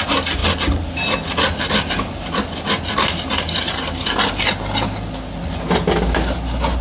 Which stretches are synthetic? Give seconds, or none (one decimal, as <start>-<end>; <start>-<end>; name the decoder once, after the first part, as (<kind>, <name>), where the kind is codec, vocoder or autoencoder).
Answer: none